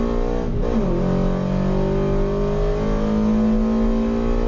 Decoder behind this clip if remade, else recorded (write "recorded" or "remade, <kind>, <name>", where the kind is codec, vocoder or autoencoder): recorded